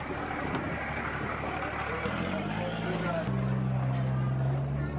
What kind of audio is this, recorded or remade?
recorded